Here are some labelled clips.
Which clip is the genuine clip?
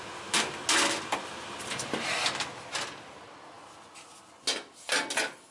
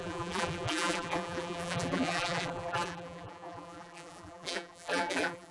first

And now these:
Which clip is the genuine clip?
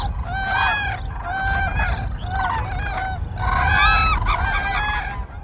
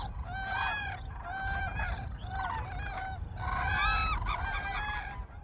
first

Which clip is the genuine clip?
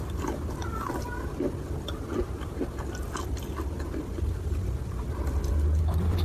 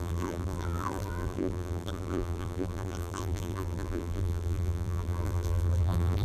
first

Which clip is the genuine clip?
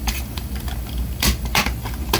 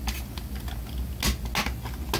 second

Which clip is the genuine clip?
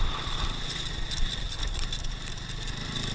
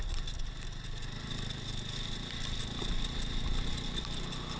second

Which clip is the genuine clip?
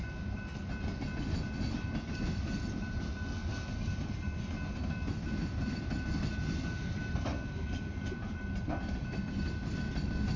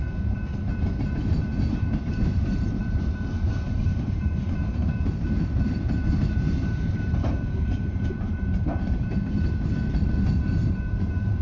first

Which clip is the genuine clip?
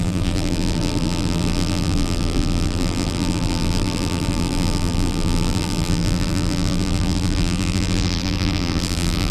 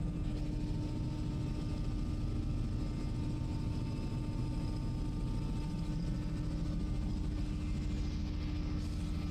second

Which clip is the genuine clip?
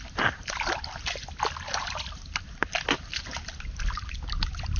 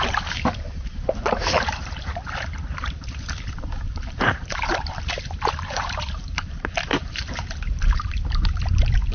first